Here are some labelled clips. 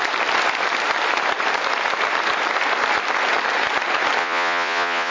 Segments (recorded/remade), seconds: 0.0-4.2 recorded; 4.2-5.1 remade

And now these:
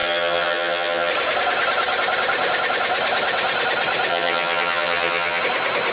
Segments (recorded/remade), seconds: 0.0-1.1 remade; 1.1-4.1 recorded; 4.1-5.4 remade; 5.4-5.9 recorded

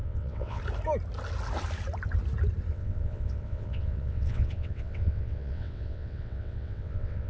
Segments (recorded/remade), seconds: 0.0-0.6 remade; 0.6-2.7 recorded; 2.7-7.3 remade